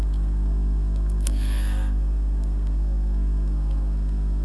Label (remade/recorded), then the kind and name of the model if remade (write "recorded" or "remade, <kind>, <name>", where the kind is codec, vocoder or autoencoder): remade, codec, SNAC